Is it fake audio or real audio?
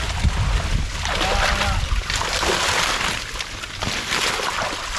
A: real